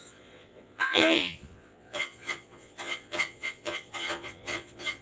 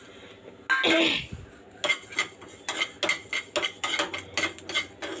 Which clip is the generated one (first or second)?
first